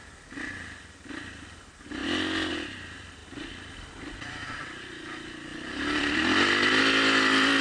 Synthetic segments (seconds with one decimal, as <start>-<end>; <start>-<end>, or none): 3.2-4.6; 5.5-6.8